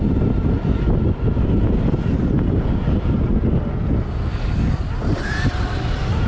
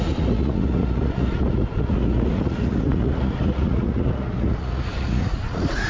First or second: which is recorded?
first